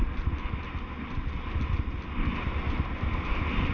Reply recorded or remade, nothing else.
recorded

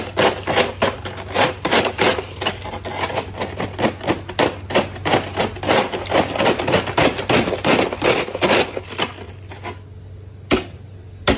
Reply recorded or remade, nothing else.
recorded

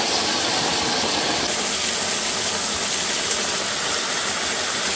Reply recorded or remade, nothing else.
recorded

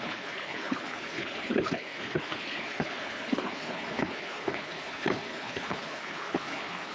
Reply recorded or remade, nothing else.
remade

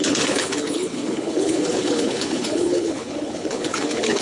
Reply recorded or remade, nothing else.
remade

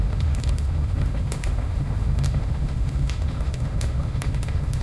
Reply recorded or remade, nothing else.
remade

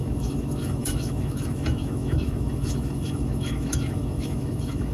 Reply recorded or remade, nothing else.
remade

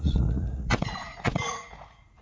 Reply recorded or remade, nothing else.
remade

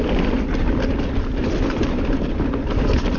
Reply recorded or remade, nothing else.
recorded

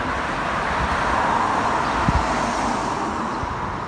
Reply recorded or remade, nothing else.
recorded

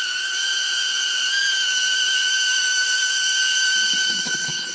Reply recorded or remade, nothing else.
remade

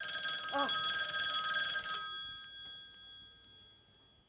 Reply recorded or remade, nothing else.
recorded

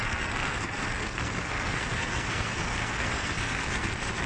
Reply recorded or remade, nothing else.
remade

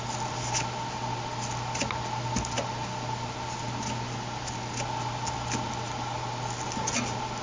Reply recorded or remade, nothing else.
recorded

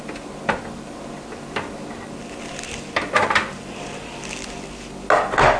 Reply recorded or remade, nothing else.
recorded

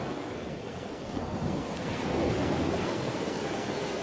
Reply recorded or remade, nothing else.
remade